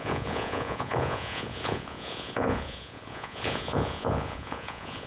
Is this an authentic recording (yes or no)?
no